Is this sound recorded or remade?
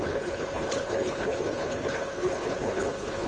remade